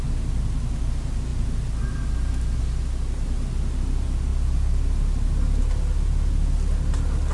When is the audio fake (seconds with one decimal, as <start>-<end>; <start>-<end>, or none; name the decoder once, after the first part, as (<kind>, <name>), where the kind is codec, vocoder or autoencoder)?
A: none